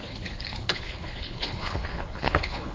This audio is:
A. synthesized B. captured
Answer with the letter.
A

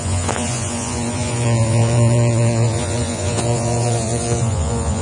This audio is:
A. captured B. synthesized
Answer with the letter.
B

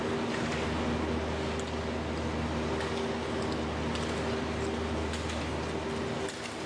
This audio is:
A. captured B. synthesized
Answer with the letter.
A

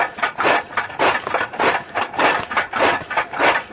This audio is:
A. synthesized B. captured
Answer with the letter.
B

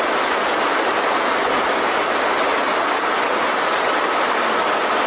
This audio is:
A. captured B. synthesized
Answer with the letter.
A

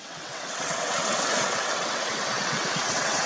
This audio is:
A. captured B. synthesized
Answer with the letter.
B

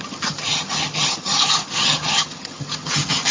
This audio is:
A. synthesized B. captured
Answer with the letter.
A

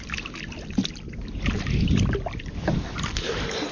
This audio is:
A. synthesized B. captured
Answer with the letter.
B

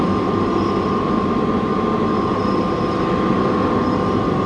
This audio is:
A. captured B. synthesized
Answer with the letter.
A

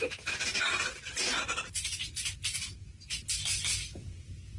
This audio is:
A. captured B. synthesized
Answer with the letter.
A